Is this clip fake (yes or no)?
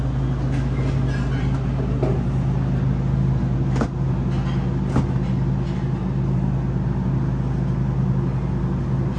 no